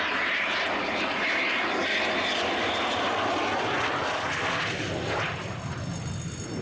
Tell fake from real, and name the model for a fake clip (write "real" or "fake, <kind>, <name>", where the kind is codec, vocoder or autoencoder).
real